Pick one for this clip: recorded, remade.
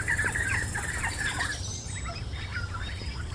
remade